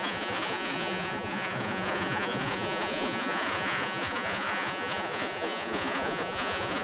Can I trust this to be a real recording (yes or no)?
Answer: no